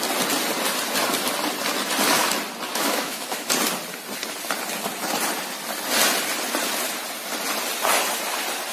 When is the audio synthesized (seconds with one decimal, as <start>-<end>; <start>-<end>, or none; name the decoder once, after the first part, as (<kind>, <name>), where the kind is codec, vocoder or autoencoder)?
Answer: 2.7-3.5 (autoencoder, DAC-VAE)